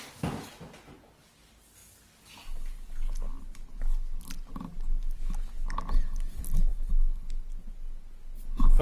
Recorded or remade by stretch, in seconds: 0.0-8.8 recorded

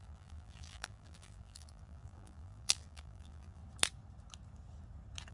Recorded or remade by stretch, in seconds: 0.0-3.6 remade; 3.6-5.3 recorded

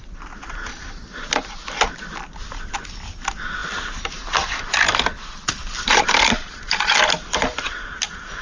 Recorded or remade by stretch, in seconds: 0.0-3.6 recorded; 3.6-8.0 remade; 8.0-8.4 recorded